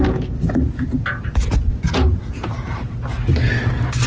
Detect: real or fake real